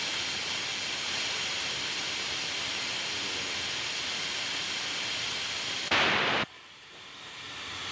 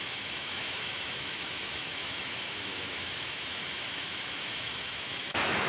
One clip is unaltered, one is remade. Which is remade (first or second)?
second